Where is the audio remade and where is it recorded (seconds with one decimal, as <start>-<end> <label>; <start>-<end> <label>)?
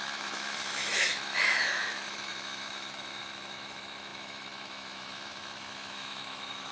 0.0-6.7 remade